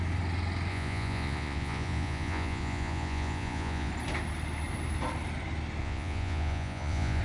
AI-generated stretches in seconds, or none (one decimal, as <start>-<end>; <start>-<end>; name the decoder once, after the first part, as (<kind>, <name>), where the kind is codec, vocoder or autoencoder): 0.7-3.9 (vocoder, Vocos); 5.8-7.2